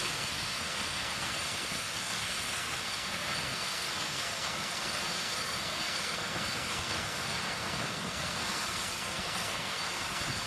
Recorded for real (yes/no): no